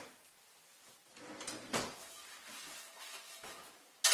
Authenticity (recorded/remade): recorded